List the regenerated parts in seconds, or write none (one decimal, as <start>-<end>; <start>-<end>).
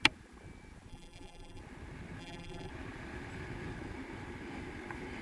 0.9-1.6; 2.2-2.7